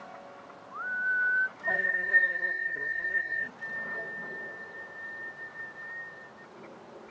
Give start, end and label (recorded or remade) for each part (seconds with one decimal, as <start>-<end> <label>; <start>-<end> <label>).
0.0-1.7 recorded; 1.7-3.5 remade; 3.5-7.1 recorded